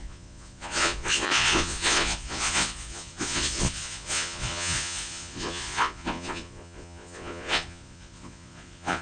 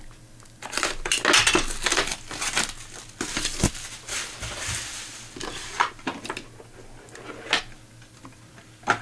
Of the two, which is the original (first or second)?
second